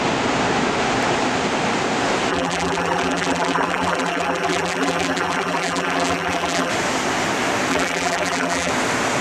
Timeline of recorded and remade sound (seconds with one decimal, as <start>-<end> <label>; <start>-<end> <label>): 0.0-2.3 recorded; 2.3-6.7 remade; 6.7-7.7 recorded; 7.7-8.7 remade; 8.7-9.2 recorded